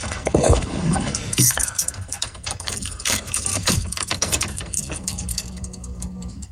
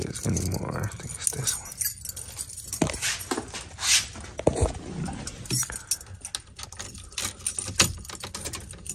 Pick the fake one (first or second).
first